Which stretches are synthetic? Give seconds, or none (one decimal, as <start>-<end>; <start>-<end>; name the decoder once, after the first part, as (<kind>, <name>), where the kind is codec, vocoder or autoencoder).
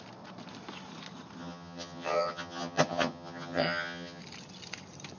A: 1.4-4.2 (vocoder, HiFi-GAN)